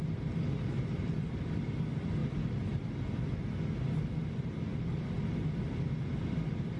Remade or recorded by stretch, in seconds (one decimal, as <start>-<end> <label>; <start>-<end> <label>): 0.0-6.8 recorded